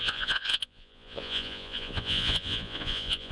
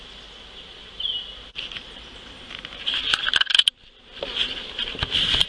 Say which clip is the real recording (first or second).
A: second